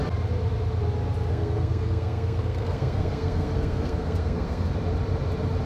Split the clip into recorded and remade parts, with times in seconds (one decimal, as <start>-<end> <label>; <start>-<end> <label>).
0.0-1.3 recorded; 1.3-4.7 remade; 4.7-5.7 recorded